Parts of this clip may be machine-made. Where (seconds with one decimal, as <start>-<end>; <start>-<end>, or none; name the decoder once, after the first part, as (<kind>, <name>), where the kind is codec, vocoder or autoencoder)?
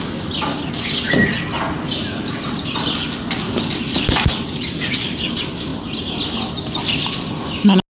none